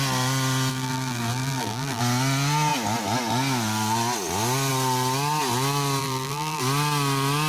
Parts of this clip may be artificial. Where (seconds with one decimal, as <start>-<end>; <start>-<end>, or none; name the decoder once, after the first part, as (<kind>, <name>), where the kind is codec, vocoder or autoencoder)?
0.7-2.0 (vocoder, BigVGAN v2); 6.0-6.6